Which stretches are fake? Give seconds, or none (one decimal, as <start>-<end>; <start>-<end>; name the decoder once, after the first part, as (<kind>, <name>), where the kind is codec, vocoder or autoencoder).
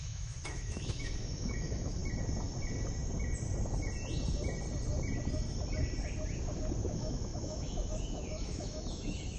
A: 0.0-2.0 (autoencoder, DAC-VAE); 6.8-9.4